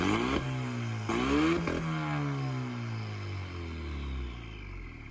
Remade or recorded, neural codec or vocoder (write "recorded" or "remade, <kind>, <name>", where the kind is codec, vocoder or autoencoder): recorded